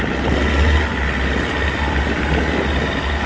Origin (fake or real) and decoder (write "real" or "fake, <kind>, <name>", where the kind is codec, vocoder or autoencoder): real